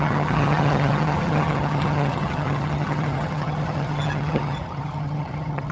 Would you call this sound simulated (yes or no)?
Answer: yes